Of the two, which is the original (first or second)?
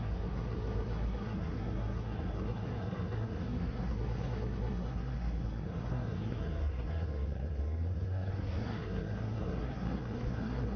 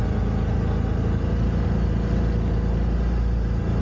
second